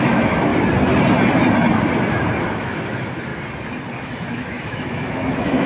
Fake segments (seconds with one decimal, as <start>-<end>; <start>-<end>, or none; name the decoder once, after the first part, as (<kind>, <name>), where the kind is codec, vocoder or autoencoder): 0.0-0.5 (autoencoder, DAC-VAE); 2.5-3.3; 3.9-5.7

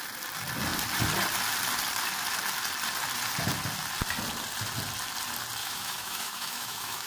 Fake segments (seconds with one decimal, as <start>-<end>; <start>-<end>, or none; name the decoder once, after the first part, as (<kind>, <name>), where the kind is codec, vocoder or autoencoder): 5.6-7.1 (autoencoder, DAC-VAE)

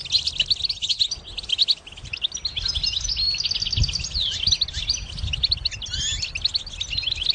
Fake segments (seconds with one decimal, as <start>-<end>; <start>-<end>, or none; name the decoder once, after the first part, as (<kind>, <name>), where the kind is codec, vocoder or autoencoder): none

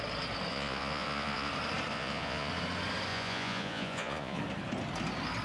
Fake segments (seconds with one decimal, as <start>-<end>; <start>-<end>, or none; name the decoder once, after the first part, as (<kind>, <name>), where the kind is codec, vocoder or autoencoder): 0.5-1.5 (vocoder, Vocos); 1.9-2.5; 3.1-4.4

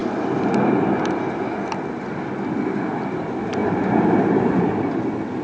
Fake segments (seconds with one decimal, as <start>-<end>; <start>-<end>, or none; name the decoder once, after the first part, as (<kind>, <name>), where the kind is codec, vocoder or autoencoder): 3.6-4.9 (vocoder, BigVGAN v2)

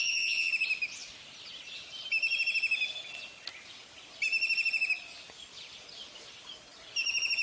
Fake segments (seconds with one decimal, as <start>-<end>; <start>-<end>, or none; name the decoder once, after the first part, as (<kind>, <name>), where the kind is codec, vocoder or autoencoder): 0.0-0.5 (vocoder, Vocos)

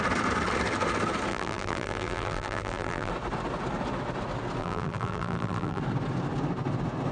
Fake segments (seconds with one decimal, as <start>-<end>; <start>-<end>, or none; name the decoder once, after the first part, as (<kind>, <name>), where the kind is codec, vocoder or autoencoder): 1.3-3.1 (vocoder, BigVGAN v2); 4.6-5.8